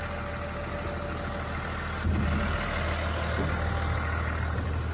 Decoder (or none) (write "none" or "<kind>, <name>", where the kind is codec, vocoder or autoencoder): none